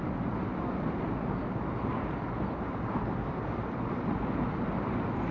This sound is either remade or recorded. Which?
recorded